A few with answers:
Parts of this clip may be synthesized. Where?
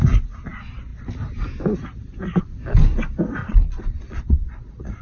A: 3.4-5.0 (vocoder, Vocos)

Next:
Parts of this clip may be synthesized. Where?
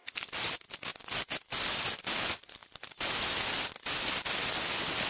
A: none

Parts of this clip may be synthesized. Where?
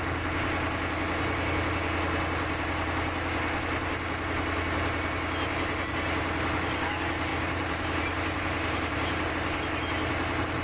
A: 7.3-9.3 (vocoder, BigVGAN v2)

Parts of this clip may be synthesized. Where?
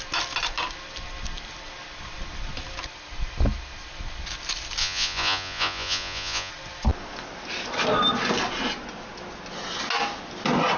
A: 4.8-6.5 (vocoder, Vocos)